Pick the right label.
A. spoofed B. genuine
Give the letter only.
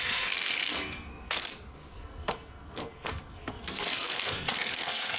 A